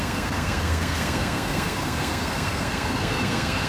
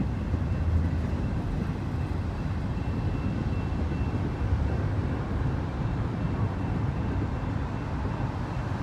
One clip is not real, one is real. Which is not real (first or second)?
first